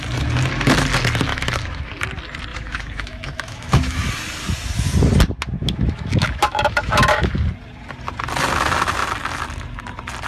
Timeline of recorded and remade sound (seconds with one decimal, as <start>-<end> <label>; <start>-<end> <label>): 0.0-1.3 recorded; 1.3-1.9 remade; 1.9-2.5 recorded; 2.5-4.1 remade; 4.1-5.6 recorded; 5.6-7.3 remade; 7.3-10.3 recorded